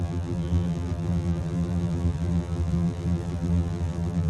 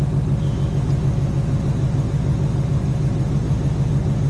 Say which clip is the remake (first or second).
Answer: first